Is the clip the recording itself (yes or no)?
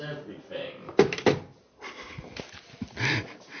yes